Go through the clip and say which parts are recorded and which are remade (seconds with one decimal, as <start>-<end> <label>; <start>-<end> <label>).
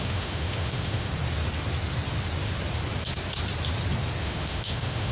0.0-1.1 remade; 1.1-4.2 recorded; 4.2-5.1 remade